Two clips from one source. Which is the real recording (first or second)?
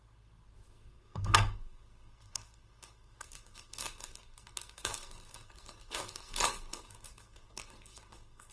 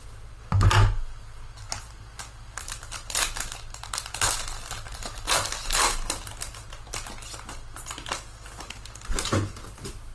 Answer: second